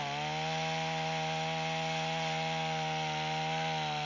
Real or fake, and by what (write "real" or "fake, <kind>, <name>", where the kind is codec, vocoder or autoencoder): real